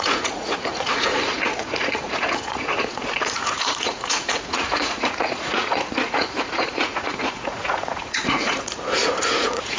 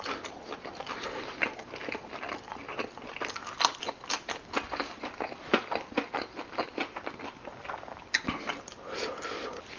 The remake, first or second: first